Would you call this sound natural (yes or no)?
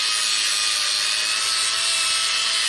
yes